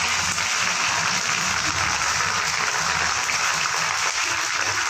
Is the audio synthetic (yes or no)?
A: no